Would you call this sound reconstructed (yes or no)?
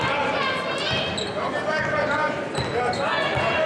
no